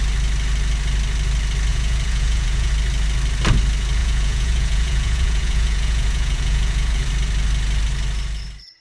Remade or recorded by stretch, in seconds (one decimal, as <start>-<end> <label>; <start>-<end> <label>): 0.0-1.7 recorded; 1.7-2.7 remade; 2.7-4.0 recorded; 4.0-7.1 remade; 7.1-8.8 recorded